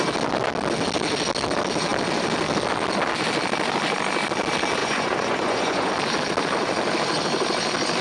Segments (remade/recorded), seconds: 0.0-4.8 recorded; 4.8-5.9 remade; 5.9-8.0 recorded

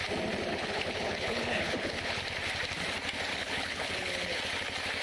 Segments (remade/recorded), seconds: 0.0-0.5 recorded; 0.5-2.2 remade; 2.2-3.3 recorded; 3.3-4.4 remade; 4.4-5.0 recorded

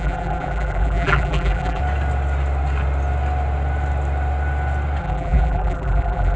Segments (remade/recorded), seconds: 0.0-1.8 remade; 1.8-5.0 recorded; 5.0-6.4 remade

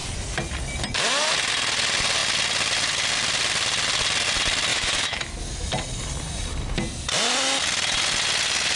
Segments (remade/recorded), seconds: 0.0-4.7 recorded; 4.7-5.4 remade; 5.4-8.8 recorded

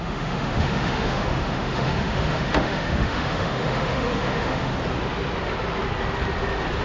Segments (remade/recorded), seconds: 0.0-4.7 remade; 4.7-6.8 recorded

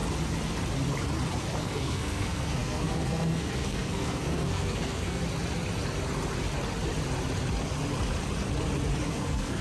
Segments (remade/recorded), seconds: 0.0-1.6 recorded; 1.6-5.2 remade; 5.2-9.1 recorded; 9.1-9.6 remade

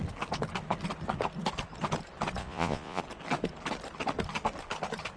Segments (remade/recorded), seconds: 0.0-2.4 recorded; 2.4-3.0 remade; 3.0-5.2 recorded